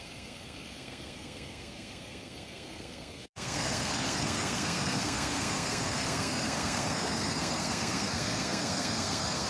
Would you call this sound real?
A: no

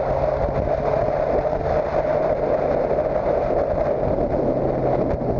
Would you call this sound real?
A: yes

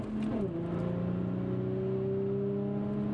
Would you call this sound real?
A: yes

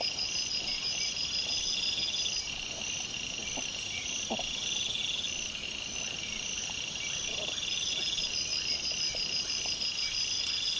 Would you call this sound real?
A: yes